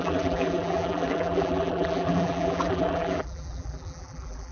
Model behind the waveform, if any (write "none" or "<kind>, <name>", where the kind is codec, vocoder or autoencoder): vocoder, BigVGAN v2